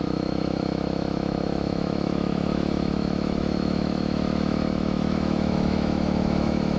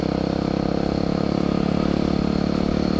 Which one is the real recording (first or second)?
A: second